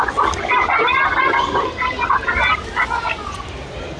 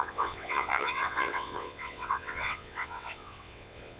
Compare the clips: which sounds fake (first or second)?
second